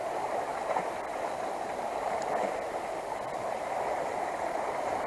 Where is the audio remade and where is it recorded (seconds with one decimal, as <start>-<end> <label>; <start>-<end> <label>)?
0.0-5.1 recorded